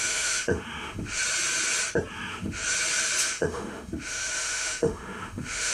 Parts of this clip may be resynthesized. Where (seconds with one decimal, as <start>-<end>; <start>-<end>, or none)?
0.0-1.2; 2.1-2.6; 3.2-5.7